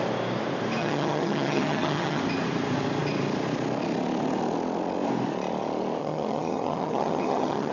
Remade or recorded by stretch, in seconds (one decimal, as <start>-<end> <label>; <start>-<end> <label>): 0.0-0.8 recorded; 0.8-2.2 remade; 2.2-6.0 recorded; 6.0-7.7 remade